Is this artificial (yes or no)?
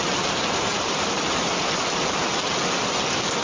no